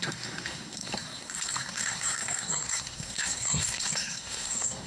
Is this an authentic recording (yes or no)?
no